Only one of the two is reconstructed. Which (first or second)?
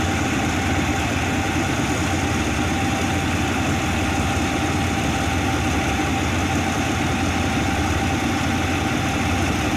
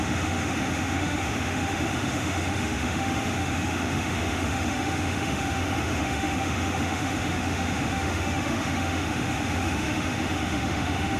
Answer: second